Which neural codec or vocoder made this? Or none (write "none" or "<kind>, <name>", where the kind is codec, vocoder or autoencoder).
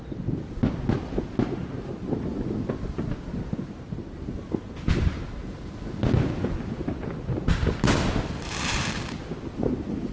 none